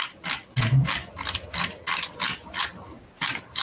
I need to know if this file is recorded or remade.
recorded